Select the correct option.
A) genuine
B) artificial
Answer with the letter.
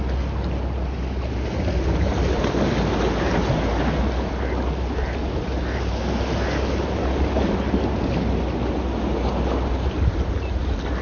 A